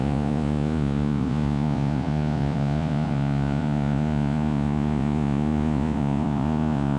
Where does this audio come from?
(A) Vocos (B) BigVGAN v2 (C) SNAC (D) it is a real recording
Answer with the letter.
A